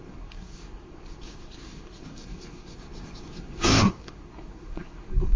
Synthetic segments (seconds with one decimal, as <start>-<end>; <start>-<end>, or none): 0.0-5.4